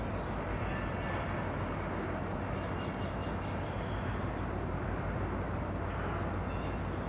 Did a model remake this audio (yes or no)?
no